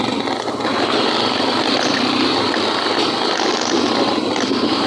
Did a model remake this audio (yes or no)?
no